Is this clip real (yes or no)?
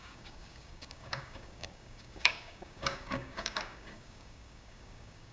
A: no